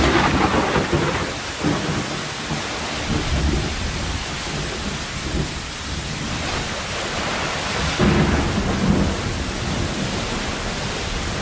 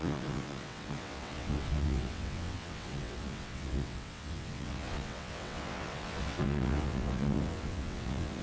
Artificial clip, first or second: second